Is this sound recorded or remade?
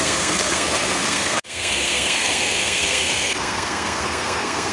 remade